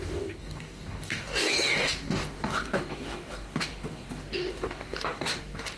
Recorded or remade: remade